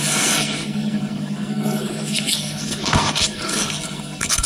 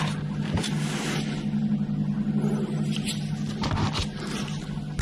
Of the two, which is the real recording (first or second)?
second